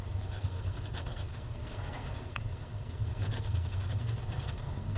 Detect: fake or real fake